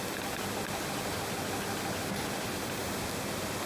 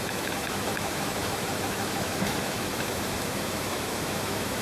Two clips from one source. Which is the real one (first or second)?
first